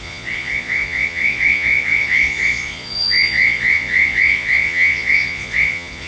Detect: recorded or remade remade